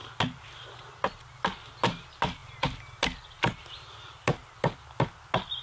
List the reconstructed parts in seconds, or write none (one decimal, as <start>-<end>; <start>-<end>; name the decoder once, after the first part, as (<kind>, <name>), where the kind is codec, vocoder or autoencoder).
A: none